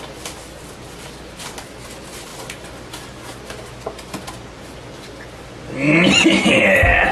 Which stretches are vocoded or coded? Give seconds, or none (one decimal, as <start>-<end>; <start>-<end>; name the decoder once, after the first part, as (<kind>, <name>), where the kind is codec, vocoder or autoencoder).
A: none